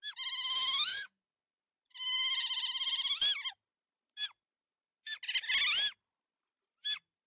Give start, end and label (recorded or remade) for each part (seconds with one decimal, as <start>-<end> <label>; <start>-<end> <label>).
0.0-0.9 recorded; 0.9-1.6 remade; 1.6-7.3 recorded

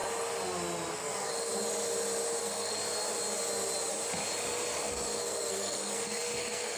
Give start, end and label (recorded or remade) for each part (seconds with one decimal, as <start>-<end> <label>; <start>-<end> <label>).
0.0-0.9 recorded; 0.9-1.5 remade; 1.5-2.4 recorded; 2.4-2.8 remade; 2.8-4.8 recorded; 4.8-6.8 remade

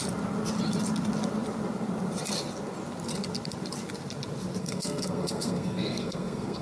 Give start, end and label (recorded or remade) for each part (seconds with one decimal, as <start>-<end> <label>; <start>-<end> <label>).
0.0-4.6 recorded; 4.6-6.6 remade

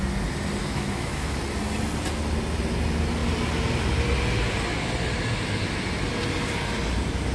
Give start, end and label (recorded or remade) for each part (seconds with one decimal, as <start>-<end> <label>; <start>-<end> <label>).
0.0-0.6 recorded; 0.6-1.4 remade; 1.4-7.3 recorded

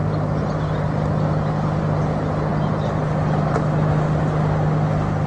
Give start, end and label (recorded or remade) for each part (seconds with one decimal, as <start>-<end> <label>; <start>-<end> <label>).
0.0-5.3 recorded

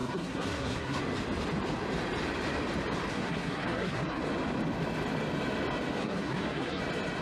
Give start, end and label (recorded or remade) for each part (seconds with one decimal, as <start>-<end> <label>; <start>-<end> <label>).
0.0-1.0 remade; 1.0-3.1 recorded; 3.1-4.2 remade; 4.2-6.0 recorded; 6.0-6.8 remade; 6.8-7.2 recorded

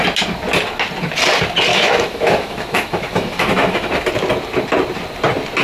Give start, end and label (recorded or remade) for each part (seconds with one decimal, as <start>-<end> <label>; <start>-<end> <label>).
0.0-1.7 recorded; 1.7-3.9 remade; 3.9-5.6 recorded